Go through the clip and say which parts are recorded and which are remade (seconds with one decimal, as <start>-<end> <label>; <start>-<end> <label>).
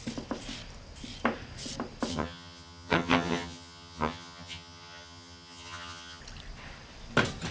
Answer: 0.0-2.1 recorded; 2.1-6.2 remade; 6.2-7.5 recorded